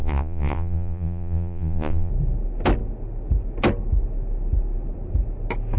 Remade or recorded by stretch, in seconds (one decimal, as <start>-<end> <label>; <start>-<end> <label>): 0.0-2.1 remade; 2.1-5.8 recorded